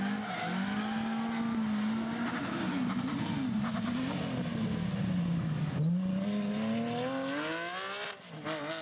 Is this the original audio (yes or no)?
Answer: yes